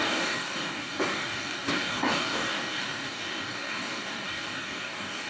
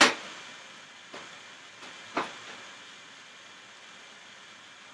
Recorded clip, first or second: second